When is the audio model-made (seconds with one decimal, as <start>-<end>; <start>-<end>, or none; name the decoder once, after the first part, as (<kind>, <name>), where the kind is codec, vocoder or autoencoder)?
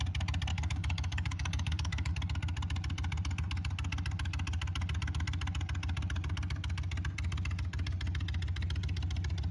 0.5-2.1 (codec, DAC)